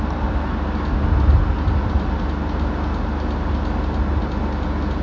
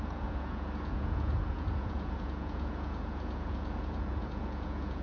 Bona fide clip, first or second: first